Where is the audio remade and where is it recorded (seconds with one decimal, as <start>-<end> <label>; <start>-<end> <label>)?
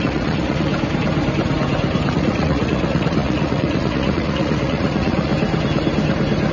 0.0-0.7 remade; 0.7-2.1 recorded; 2.1-5.3 remade; 5.3-6.5 recorded